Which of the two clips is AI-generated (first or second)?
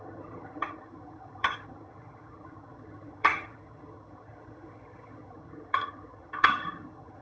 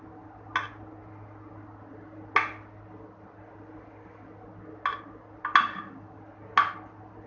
first